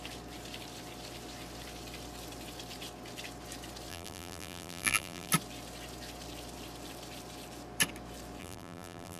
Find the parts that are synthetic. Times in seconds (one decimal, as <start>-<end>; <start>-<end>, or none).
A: 3.9-5.3; 8.4-9.2